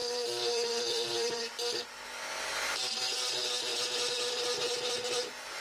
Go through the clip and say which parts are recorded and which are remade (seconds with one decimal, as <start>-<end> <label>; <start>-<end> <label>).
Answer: 0.0-1.5 remade; 1.5-5.6 recorded